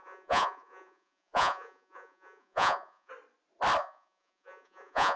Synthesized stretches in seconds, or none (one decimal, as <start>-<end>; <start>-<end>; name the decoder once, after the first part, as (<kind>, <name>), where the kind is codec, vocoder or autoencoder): 0.0-3.1 (vocoder, Vocos); 3.8-5.2